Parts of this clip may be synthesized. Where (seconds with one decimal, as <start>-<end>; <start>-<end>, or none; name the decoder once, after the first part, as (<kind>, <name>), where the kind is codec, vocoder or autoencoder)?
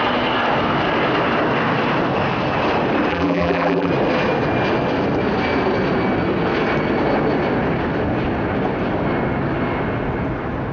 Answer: 3.1-3.9 (vocoder, BigVGAN v2)